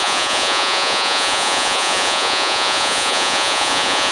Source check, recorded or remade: remade